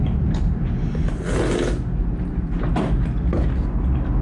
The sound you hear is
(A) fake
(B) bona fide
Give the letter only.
B